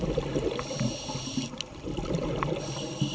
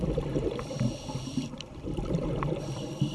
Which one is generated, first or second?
second